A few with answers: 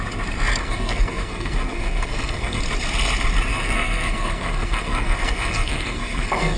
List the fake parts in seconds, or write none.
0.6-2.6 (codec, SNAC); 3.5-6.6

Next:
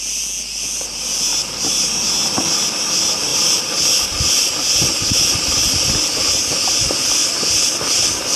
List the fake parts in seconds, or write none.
1.3-1.9 (vocoder, BigVGAN v2); 3.3-6.3; 7.2-7.9

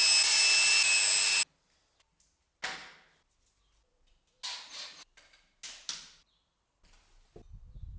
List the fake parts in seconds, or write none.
none

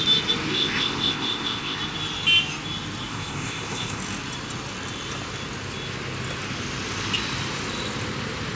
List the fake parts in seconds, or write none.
0.5-1.8 (codec, ZipCodec); 3.1-4.0

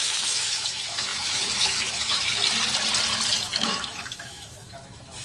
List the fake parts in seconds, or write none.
0.0-2.4 (autoencoder, DAC-VAE); 3.3-5.2

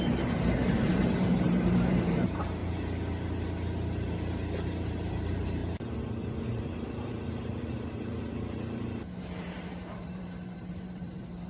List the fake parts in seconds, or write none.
0.0-2.6 (vocoder, BigVGAN v2); 5.1-5.6; 6.3-11.5

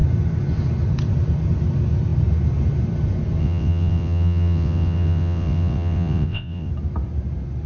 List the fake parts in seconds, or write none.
3.4-6.7 (vocoder, WaveNeXt)

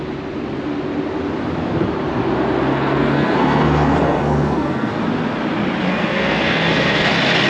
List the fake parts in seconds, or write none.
2.7-4.9 (codec, SNAC); 5.9-7.1